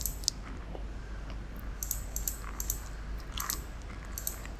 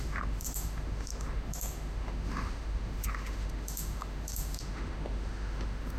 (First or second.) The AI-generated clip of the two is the second